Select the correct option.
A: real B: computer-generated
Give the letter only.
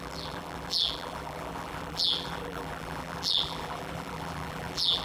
B